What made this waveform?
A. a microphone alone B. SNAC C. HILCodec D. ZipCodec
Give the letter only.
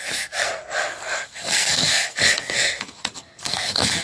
B